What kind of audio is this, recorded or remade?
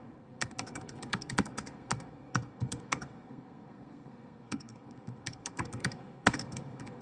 remade